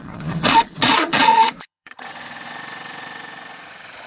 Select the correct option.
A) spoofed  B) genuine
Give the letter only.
A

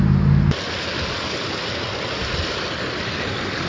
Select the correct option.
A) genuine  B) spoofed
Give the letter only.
A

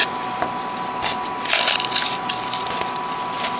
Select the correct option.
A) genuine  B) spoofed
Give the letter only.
A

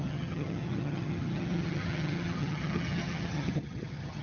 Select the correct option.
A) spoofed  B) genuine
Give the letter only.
A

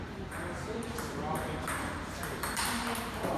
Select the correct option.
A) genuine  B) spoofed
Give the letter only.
B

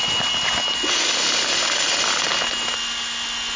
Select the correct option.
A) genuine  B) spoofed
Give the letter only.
A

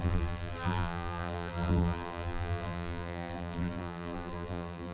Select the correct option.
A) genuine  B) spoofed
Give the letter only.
B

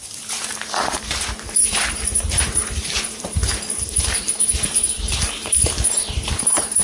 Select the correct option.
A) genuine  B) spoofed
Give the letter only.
B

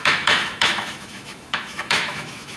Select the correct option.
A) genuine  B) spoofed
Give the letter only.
B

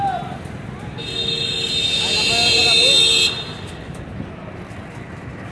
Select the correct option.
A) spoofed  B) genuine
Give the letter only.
B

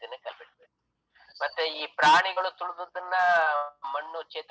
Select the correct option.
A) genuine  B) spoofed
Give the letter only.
A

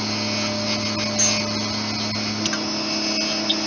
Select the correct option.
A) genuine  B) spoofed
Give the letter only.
A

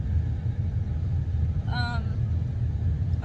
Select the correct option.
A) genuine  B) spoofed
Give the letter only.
A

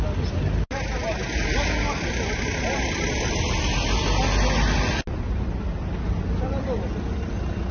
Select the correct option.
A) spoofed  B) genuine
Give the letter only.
B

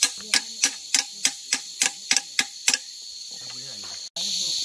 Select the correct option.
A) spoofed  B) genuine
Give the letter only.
B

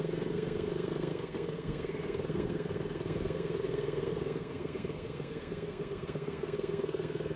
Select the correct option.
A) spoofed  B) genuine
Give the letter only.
A